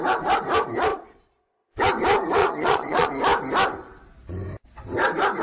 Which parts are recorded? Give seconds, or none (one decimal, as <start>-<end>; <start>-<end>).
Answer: 0.0-0.9; 1.7-2.4; 3.1-5.4